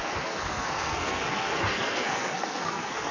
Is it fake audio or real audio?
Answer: fake